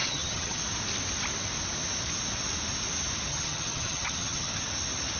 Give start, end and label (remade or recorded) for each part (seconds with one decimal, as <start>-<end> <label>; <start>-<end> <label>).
0.0-0.6 remade; 0.6-3.3 recorded; 3.3-4.5 remade; 4.5-5.2 recorded

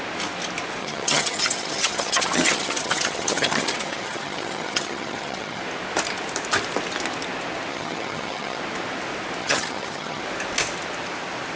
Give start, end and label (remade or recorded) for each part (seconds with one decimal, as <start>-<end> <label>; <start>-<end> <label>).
0.0-0.8 recorded; 0.8-5.6 remade; 5.6-7.7 recorded; 7.7-8.6 remade; 8.6-9.4 recorded; 9.4-10.2 remade; 10.2-11.6 recorded

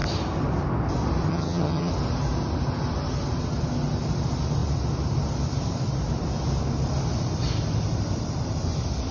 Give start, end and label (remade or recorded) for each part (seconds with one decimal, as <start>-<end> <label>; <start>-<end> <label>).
0.0-1.3 recorded; 1.3-1.9 remade; 1.9-9.1 recorded

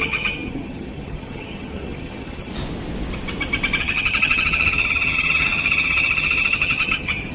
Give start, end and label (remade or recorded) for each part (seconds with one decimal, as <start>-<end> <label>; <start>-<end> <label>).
0.0-2.5 remade; 2.5-3.8 recorded; 3.8-7.3 remade